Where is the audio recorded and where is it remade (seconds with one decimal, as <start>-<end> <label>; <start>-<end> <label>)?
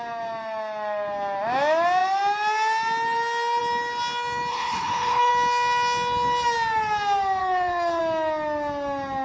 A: 0.0-4.5 recorded; 4.5-5.3 remade; 5.3-7.4 recorded; 7.4-8.0 remade; 8.0-9.2 recorded